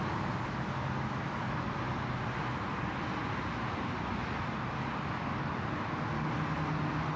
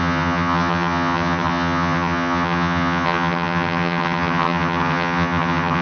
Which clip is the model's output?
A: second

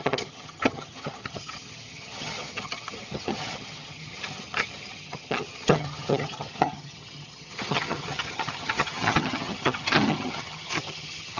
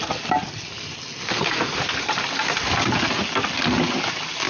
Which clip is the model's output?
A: first